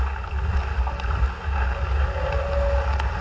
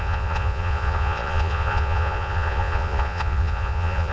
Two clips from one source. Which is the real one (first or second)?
first